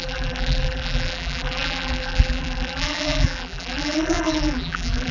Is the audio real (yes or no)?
no